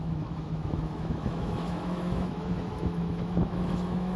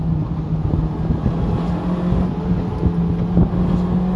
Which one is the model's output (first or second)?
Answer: first